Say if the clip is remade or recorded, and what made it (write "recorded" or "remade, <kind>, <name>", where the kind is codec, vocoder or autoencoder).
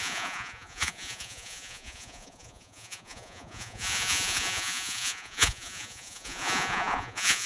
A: remade, vocoder, Vocos